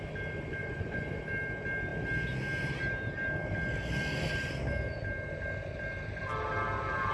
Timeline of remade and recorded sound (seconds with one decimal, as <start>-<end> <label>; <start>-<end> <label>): 0.0-0.6 recorded; 0.6-1.2 remade; 1.2-7.1 recorded